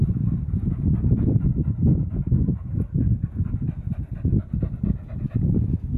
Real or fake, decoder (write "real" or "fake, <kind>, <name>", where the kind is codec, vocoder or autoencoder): real